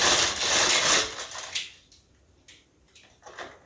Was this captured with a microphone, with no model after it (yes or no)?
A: yes